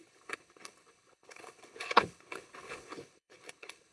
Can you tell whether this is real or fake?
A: fake